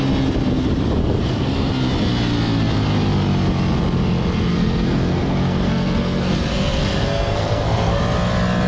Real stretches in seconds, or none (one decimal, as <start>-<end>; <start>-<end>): 0.0-1.0; 1.7-4.5; 8.0-8.7